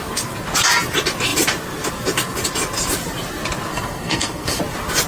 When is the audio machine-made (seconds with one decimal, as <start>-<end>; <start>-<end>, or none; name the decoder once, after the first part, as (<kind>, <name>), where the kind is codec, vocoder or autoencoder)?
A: 3.7-4.6 (codec, SNAC)

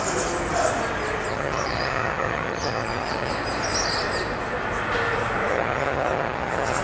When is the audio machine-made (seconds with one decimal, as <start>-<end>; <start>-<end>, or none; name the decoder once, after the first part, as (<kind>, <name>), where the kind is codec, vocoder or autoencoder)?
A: 1.3-3.3 (vocoder, HiFi-GAN); 5.5-6.8

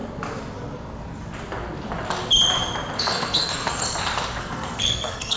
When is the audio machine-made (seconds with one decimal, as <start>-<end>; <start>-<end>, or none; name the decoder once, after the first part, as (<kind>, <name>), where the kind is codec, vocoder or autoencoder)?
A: 3.0-3.8 (codec, SNAC); 4.4-5.4

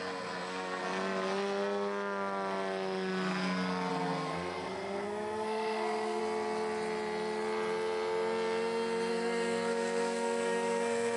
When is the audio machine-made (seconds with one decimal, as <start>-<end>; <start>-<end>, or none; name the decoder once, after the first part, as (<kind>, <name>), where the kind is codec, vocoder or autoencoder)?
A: 0.0-0.8 (codec, SNAC); 3.9-6.2; 9.1-11.2

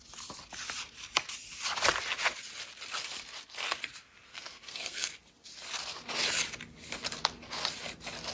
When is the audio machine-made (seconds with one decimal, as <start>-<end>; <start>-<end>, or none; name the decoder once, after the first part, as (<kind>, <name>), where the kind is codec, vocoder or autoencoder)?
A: 4.3-5.1 (codec, SNAC)

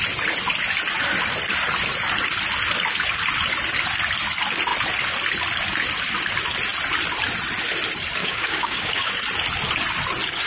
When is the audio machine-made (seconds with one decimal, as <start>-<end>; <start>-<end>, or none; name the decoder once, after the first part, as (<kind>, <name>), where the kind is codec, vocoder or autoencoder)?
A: 8.2-9.1 (codec, DAC)

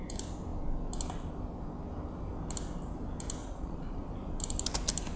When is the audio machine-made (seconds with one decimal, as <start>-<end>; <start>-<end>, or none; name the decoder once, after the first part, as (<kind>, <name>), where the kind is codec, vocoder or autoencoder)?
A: 3.4-4.1 (vocoder, Vocos)

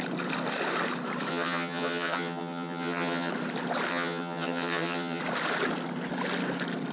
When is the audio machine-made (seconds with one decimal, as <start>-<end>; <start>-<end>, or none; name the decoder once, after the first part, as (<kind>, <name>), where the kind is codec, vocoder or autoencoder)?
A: 1.3-3.3 (vocoder, HiFi-GAN); 3.9-5.2